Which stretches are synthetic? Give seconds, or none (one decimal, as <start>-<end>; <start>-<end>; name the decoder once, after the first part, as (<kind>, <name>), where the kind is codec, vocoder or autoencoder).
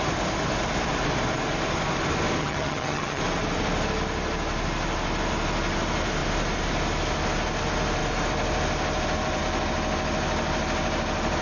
2.4-3.2 (vocoder, HiFi-GAN)